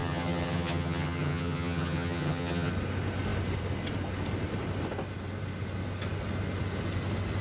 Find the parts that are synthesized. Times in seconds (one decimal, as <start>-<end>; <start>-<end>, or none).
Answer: 0.0-2.7